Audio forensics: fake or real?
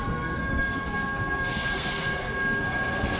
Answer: fake